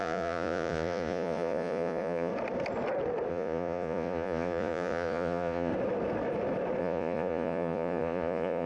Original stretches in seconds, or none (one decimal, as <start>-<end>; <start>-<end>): 2.3-3.3; 5.7-6.8